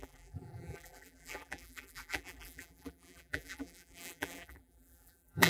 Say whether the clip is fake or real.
fake